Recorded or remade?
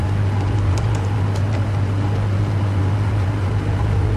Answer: recorded